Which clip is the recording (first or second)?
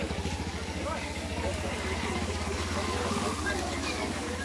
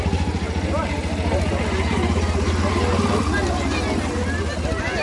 second